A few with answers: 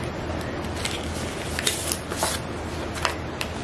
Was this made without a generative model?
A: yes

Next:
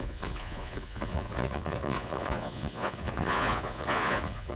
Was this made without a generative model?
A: no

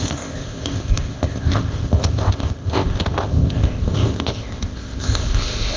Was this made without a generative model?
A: no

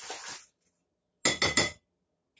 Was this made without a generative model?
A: yes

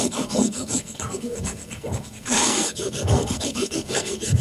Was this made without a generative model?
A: no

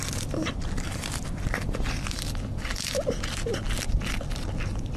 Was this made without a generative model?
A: no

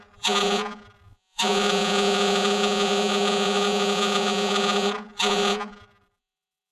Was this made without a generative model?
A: no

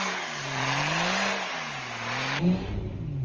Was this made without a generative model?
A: no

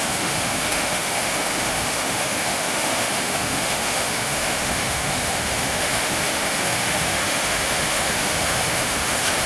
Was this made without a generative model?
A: no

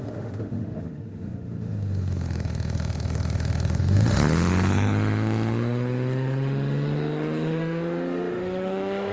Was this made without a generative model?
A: no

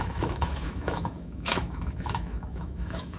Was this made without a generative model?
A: no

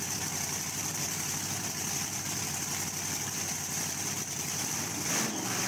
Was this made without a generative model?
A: no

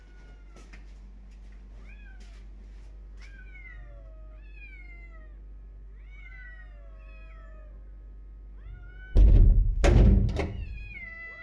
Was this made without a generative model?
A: yes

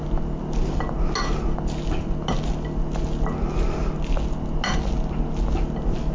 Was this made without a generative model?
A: yes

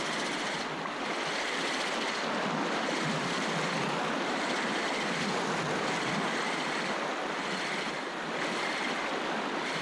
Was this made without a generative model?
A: yes